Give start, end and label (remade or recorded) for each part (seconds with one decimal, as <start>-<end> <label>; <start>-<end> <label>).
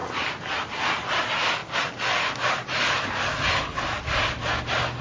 0.0-5.0 recorded